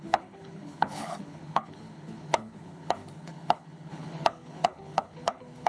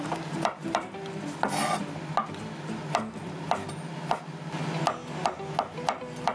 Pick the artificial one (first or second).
first